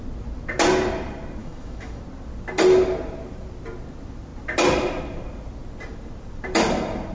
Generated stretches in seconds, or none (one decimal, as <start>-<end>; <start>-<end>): 1.4-2.0